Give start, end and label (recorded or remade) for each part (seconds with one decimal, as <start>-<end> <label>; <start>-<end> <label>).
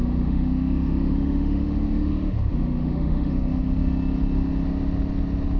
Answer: 0.0-3.8 remade; 3.8-5.6 recorded